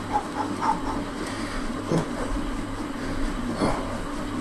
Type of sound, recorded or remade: recorded